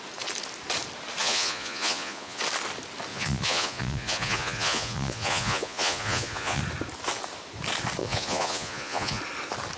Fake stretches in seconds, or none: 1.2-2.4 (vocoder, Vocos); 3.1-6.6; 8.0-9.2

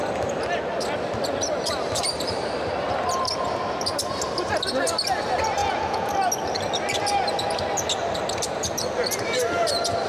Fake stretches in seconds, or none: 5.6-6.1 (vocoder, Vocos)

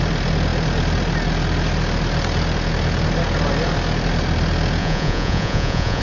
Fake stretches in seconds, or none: 4.8-6.0 (vocoder, Vocos)

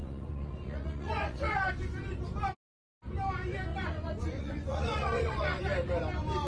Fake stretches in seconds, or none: 0.0-1.7 (vocoder, Vocos); 3.7-5.6